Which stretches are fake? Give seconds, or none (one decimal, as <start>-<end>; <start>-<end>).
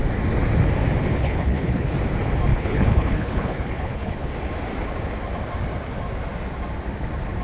1.1-1.9; 2.5-4.3